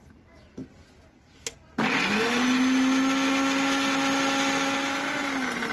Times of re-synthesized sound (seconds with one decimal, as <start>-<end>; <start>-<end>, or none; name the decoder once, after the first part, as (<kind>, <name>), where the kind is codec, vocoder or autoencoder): none